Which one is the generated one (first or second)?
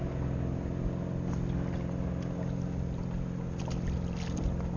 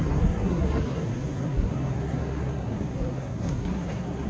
second